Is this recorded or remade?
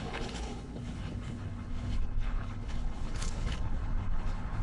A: remade